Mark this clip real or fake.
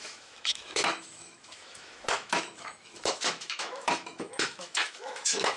fake